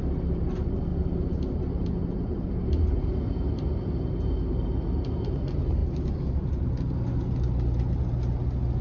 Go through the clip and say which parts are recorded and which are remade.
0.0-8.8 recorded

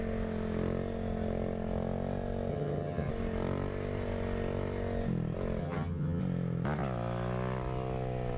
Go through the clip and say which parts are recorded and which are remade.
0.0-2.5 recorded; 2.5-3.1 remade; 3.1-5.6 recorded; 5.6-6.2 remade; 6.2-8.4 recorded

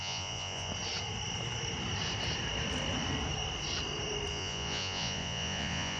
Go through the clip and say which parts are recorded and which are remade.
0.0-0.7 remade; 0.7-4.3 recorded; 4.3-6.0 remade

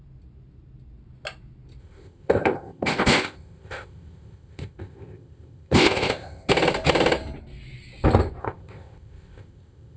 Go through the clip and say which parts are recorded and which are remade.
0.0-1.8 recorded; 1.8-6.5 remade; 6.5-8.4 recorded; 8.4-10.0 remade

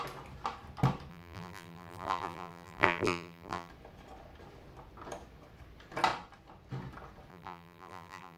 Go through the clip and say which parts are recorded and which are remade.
0.0-1.1 recorded; 1.1-3.7 remade; 3.7-7.3 recorded; 7.3-8.4 remade

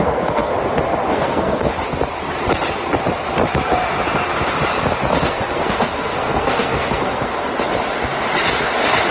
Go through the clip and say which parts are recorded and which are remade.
0.0-0.5 remade; 0.5-1.1 recorded; 1.1-1.7 remade; 1.7-5.2 recorded; 5.2-7.3 remade; 7.3-9.1 recorded

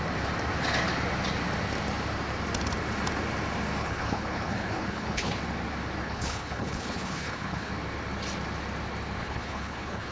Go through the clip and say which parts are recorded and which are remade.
0.0-3.8 recorded; 3.8-5.4 remade; 5.4-6.0 recorded; 6.0-7.7 remade; 7.7-9.2 recorded; 9.2-10.1 remade

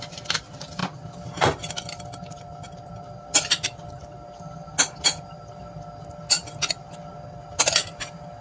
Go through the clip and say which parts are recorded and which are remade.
0.0-8.4 recorded